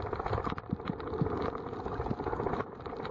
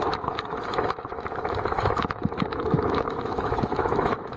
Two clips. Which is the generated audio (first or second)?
second